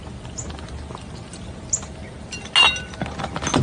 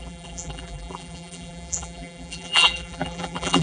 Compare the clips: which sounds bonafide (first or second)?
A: first